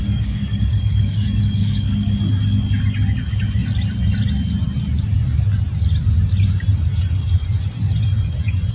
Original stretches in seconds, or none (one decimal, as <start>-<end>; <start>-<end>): 2.2-8.7